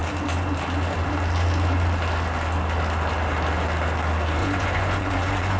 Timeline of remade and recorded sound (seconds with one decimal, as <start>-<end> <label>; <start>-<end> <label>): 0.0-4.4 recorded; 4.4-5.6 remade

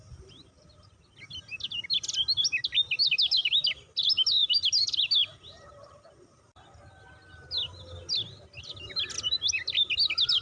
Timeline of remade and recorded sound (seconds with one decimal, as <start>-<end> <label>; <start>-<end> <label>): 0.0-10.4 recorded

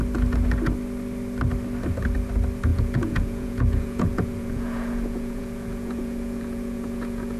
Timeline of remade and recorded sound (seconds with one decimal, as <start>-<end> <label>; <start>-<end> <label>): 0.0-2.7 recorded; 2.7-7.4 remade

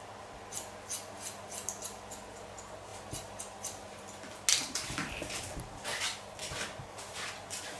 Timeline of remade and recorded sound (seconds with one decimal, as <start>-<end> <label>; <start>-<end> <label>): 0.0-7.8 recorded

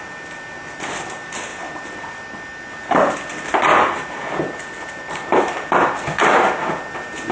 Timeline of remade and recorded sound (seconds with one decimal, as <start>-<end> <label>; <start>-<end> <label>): 0.0-7.3 recorded

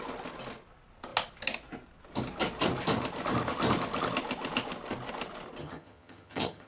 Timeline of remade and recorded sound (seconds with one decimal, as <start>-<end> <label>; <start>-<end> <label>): 0.0-5.6 recorded; 5.6-6.7 remade

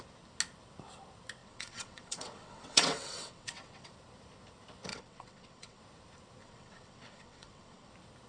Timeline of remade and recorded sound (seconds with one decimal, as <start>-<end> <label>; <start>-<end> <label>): 0.0-1.4 recorded; 1.4-3.9 remade; 3.9-4.9 recorded; 4.9-5.8 remade; 5.8-6.4 recorded; 6.4-7.9 remade; 7.9-8.3 recorded

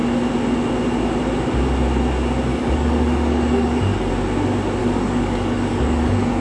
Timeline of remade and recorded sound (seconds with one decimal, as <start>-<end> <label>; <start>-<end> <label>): 0.0-2.5 recorded; 2.5-4.1 remade; 4.1-4.8 recorded; 4.8-6.4 remade